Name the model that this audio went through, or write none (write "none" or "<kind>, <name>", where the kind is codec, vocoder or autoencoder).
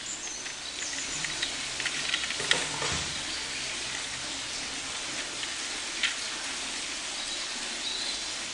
none